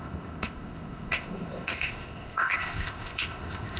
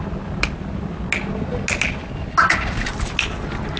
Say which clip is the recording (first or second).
second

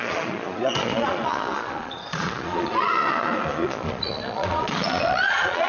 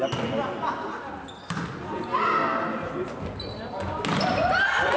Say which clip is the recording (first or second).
second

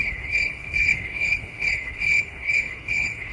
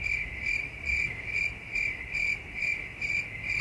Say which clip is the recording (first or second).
second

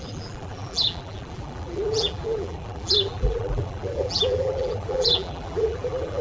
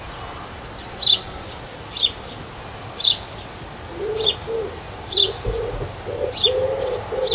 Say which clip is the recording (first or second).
second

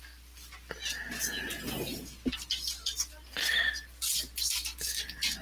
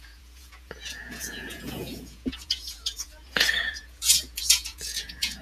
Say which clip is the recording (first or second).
first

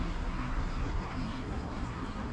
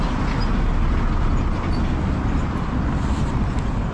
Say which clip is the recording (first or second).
second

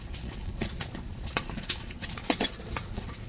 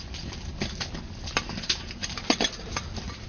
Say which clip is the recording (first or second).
second